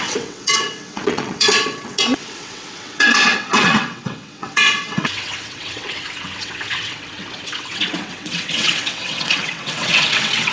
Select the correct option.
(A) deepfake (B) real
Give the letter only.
A